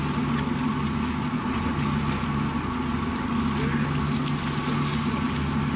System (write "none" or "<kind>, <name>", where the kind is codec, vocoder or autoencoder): none